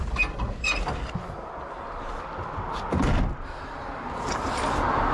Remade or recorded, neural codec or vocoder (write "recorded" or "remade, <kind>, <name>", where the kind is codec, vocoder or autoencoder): recorded